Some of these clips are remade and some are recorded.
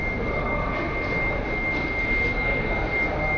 recorded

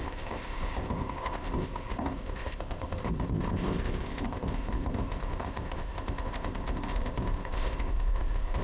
remade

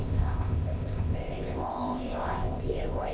remade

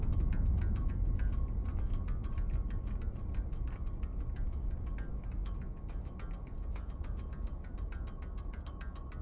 recorded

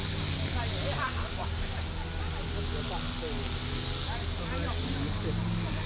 recorded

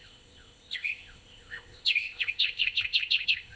remade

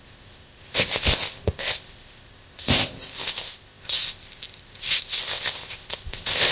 remade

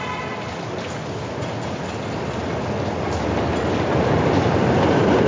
recorded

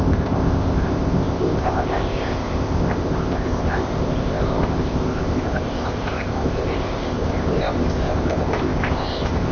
remade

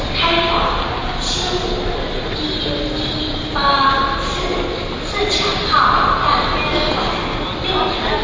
recorded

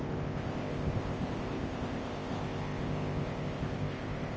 remade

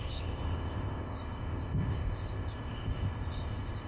remade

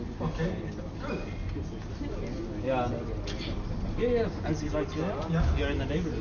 recorded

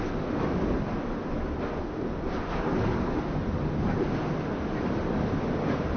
recorded